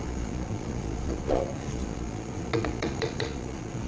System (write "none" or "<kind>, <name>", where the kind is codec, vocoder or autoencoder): vocoder, Vocos